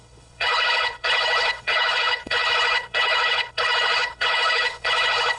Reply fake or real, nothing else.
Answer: fake